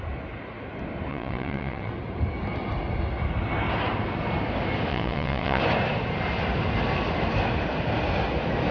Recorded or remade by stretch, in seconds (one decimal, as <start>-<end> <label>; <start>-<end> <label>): 0.0-1.1 recorded; 1.1-1.9 remade; 1.9-4.9 recorded; 4.9-5.6 remade; 5.6-8.7 recorded